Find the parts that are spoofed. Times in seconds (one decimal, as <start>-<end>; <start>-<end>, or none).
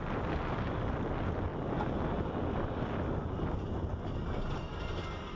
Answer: none